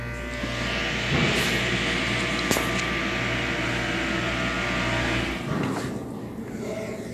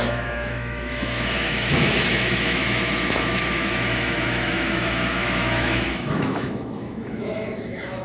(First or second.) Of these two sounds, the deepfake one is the second